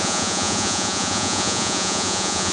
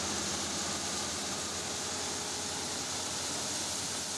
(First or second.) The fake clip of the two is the first